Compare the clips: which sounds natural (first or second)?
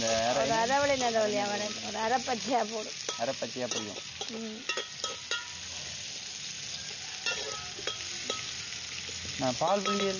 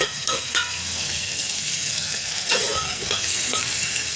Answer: first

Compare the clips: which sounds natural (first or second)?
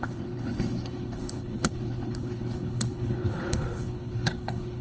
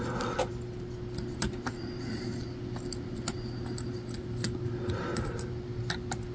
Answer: second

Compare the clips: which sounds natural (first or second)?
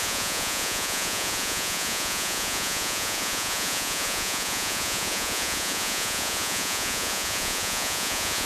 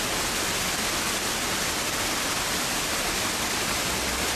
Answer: second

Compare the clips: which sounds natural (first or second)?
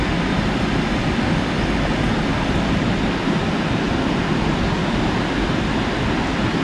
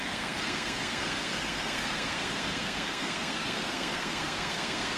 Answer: first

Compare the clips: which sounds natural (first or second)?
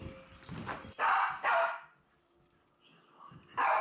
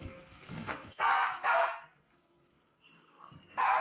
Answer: first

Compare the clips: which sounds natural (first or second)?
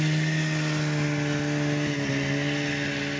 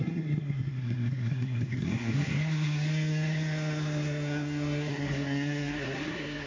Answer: first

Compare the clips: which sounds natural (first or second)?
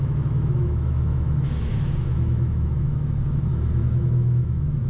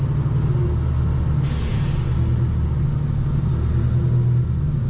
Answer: second